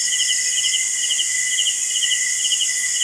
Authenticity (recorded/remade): recorded